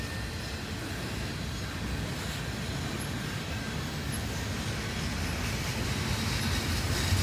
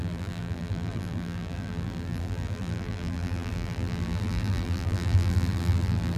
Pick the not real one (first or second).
second